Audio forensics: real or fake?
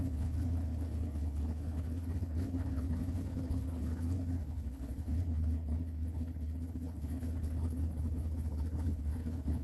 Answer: fake